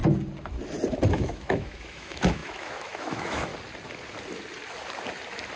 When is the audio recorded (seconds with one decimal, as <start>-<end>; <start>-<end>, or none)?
0.0-1.1; 3.5-5.6